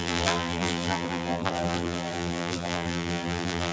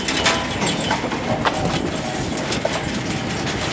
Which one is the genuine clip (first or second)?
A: second